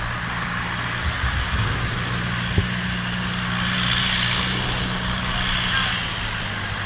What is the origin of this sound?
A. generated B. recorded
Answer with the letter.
B